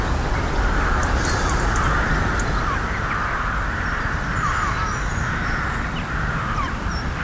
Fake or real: real